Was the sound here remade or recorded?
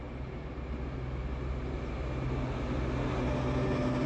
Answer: recorded